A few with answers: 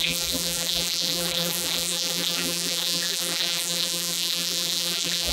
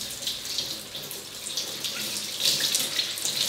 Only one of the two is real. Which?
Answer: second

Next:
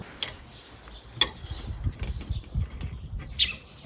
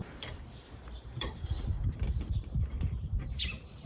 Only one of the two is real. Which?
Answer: first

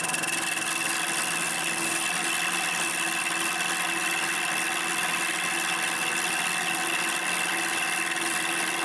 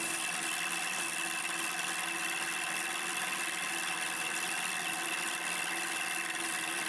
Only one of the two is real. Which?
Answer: first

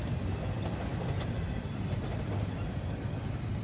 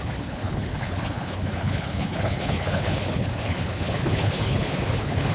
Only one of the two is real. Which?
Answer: first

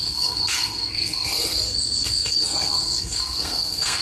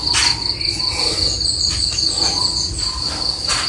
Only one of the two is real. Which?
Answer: second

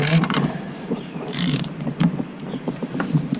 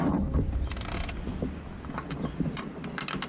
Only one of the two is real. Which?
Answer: second